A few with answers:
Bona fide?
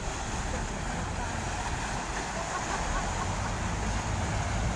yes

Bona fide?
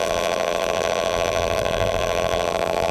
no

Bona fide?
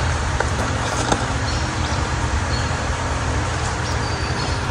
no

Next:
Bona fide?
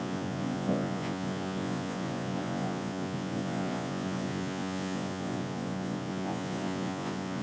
no